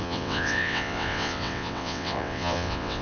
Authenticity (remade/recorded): remade